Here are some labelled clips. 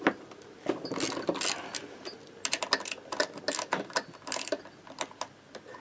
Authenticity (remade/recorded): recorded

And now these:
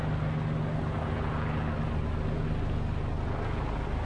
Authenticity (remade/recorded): recorded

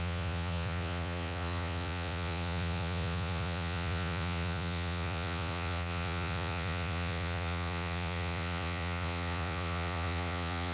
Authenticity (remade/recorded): remade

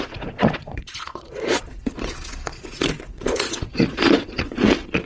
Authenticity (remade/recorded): remade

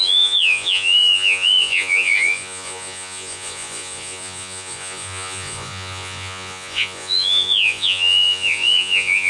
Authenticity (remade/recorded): remade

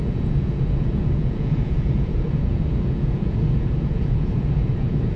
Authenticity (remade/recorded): remade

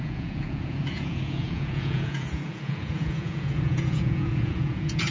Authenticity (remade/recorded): remade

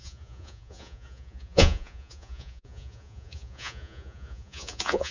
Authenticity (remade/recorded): remade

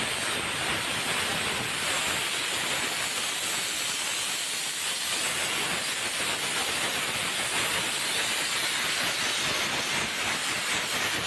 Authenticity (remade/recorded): recorded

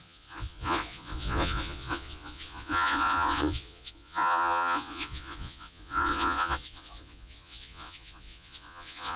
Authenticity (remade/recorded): remade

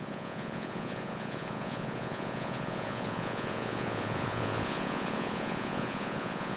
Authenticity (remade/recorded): remade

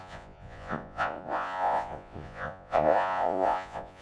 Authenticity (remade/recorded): remade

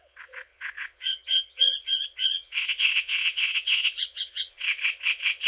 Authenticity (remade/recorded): remade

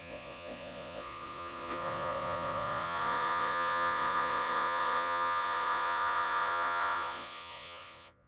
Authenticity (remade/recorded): remade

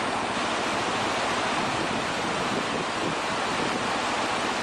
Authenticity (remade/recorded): recorded